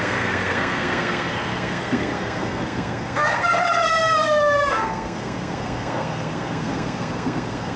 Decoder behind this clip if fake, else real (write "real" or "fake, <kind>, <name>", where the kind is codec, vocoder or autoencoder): fake, codec, SNAC